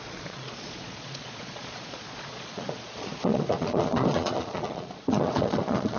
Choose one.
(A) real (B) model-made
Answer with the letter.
B